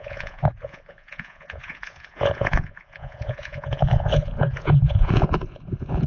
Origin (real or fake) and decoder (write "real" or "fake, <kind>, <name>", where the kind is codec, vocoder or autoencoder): fake, vocoder, Vocos